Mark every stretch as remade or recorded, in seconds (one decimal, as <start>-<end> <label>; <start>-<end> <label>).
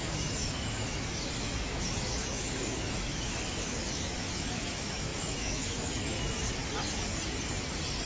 0.0-6.6 remade; 6.6-8.1 recorded